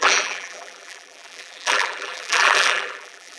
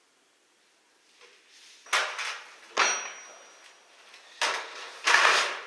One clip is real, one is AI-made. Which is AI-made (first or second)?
first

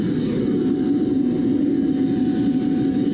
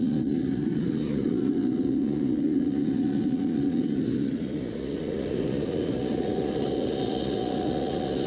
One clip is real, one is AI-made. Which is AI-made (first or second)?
second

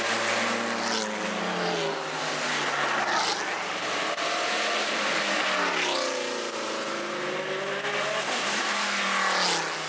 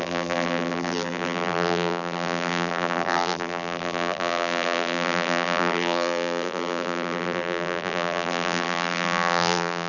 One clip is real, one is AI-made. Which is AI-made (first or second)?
second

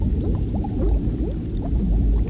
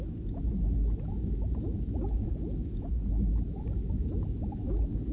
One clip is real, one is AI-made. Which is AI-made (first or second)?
second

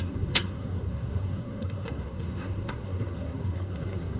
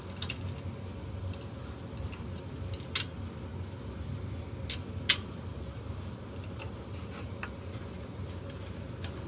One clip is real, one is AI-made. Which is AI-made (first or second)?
first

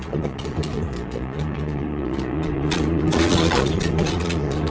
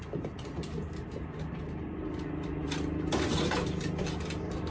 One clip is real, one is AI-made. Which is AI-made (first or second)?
first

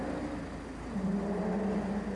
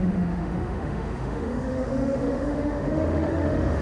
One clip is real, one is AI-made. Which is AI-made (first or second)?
second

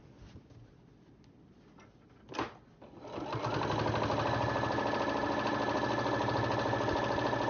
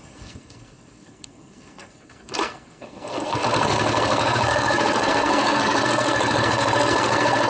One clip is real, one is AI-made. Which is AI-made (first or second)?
second